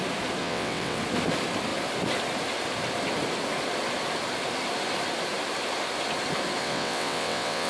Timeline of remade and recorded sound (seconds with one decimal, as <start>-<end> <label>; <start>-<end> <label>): 0.0-0.4 recorded; 0.4-1.0 remade; 1.0-6.6 recorded; 6.6-7.7 remade